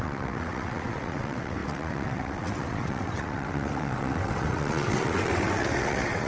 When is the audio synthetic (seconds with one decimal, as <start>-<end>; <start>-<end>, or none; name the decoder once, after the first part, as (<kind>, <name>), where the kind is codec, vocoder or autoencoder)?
0.0-6.3 (vocoder, WaveNeXt)